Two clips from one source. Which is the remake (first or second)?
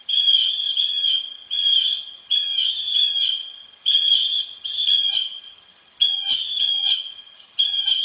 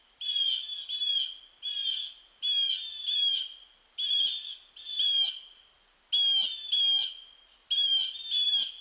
first